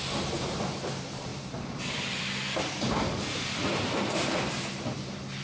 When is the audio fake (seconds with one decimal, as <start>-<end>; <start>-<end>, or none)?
1.3-4.5